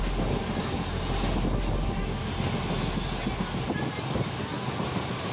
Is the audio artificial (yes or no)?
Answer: no